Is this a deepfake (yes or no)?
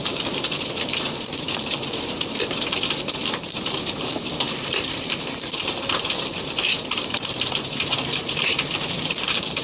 yes